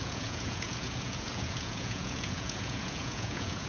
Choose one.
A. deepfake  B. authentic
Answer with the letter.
A